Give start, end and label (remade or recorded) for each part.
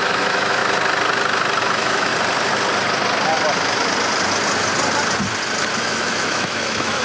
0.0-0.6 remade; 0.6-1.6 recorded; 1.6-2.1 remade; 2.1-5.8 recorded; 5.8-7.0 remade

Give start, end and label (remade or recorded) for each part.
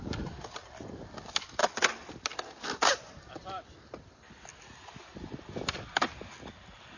0.0-7.0 recorded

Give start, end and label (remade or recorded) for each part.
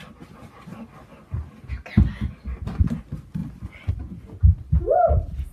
0.0-5.5 recorded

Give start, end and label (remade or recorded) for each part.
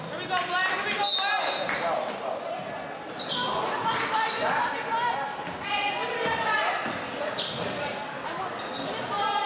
0.0-9.5 recorded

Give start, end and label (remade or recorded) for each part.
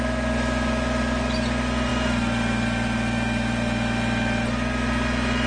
0.0-5.5 recorded